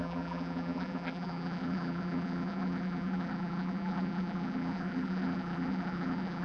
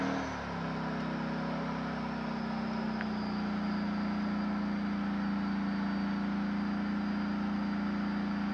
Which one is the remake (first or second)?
first